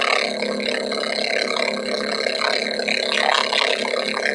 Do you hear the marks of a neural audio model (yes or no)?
no